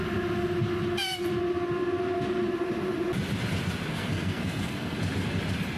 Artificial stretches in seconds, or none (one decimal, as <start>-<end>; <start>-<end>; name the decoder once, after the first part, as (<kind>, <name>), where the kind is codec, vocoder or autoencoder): 3.9-5.0 (codec, SNAC)